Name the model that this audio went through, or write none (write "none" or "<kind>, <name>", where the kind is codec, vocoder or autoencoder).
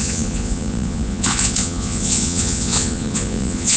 vocoder, Vocos